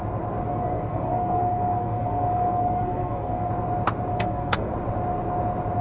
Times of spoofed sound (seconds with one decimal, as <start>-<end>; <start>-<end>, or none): 0.5-3.5; 4.1-4.7